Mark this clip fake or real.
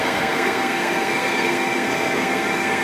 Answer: fake